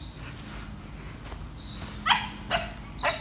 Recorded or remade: recorded